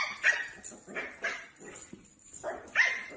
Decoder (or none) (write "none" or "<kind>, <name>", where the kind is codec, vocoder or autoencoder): none